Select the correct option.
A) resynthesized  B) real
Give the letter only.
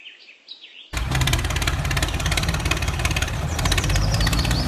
A